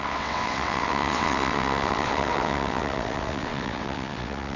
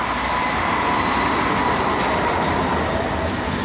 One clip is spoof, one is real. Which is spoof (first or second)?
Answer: first